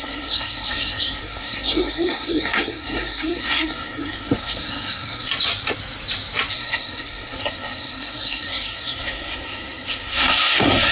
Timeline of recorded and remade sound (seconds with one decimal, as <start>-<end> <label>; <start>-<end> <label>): 0.0-5.3 remade; 5.3-6.5 recorded; 6.5-10.9 remade